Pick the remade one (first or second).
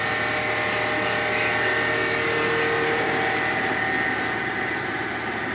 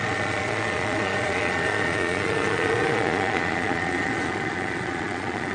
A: second